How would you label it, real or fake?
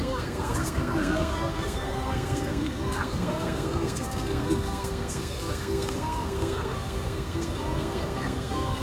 fake